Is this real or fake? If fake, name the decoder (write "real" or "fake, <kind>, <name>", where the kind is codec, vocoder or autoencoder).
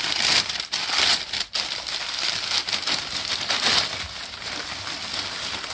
real